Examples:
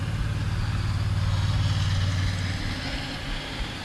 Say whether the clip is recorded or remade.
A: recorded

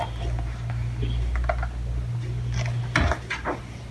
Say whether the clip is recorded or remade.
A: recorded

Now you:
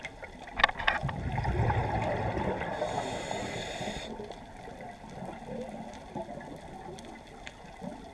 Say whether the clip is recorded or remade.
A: recorded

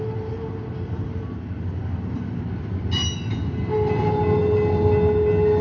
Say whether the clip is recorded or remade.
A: recorded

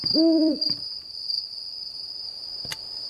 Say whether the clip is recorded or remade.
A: remade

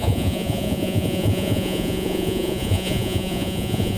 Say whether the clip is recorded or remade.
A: remade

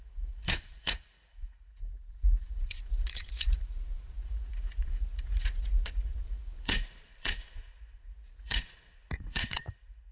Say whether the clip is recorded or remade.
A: remade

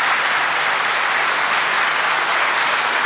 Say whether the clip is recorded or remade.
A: remade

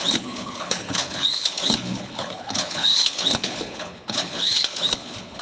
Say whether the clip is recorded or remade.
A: remade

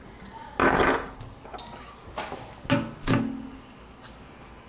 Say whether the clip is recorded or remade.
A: recorded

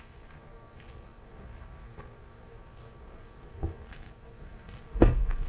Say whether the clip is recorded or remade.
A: remade